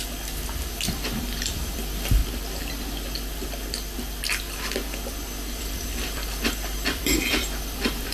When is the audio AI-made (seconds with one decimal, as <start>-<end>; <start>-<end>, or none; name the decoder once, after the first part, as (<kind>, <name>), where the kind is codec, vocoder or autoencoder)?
0.9-2.2 (vocoder, BigVGAN v2); 5.6-8.1